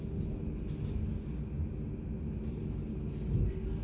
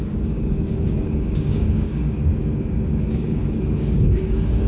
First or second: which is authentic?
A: first